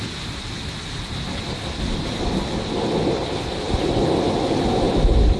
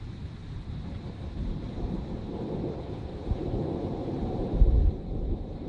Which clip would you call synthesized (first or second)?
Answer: second